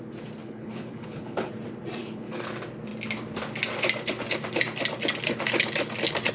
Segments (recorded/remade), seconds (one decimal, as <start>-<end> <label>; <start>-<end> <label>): 0.0-0.4 recorded; 0.4-1.5 remade; 1.5-2.0 recorded; 2.0-2.5 remade; 2.5-6.3 recorded